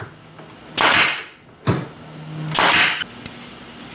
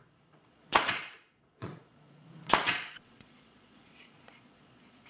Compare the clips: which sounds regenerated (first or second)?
second